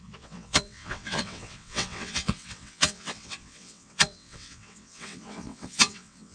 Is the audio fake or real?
fake